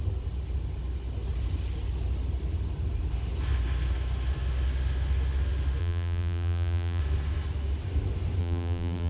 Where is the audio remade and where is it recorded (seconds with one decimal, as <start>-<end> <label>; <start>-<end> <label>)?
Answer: 0.0-5.8 recorded; 5.8-7.0 remade; 7.0-8.4 recorded; 8.4-9.1 remade